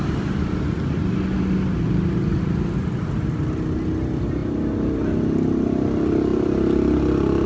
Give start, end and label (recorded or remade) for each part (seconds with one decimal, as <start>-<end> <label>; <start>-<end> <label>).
0.0-7.5 recorded